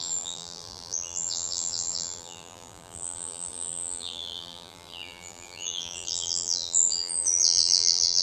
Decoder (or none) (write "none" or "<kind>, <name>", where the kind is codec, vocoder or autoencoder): vocoder, BigVGAN v2